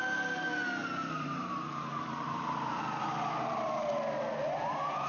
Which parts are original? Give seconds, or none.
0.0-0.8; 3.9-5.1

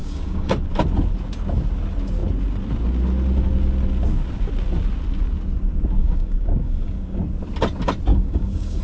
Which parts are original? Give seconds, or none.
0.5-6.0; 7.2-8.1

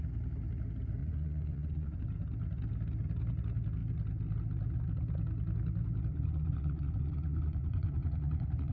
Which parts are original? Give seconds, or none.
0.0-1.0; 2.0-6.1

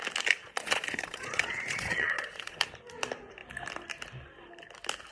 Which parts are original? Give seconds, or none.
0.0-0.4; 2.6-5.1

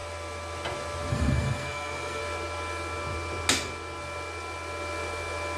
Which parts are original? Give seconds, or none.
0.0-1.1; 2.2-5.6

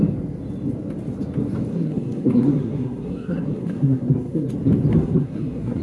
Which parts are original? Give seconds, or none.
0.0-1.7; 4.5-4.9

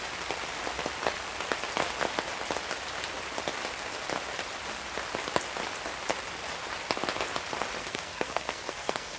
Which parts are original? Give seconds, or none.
0.0-7.8

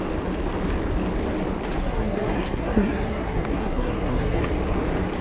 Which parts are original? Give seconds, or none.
0.0-1.8; 4.4-5.2